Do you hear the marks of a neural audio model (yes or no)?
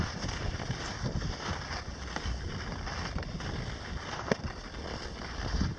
no